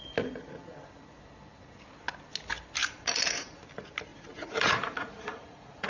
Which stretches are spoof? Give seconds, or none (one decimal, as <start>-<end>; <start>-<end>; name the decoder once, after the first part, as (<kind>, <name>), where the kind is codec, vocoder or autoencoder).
2.8-3.6 (vocoder, Vocos); 4.1-5.9